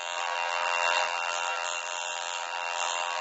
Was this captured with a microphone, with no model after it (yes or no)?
no